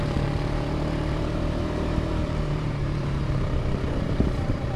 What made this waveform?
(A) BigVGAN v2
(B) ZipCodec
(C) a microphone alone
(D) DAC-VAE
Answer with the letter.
A